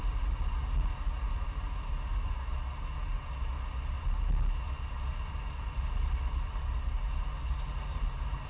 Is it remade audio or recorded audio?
recorded